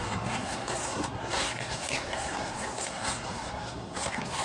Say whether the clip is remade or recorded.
remade